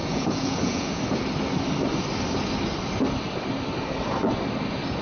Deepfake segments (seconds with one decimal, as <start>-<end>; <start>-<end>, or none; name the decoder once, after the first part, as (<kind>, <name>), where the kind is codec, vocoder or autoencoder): 0.0-1.0 (vocoder, Vocos)